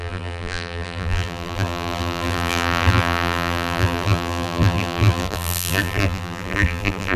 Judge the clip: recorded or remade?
remade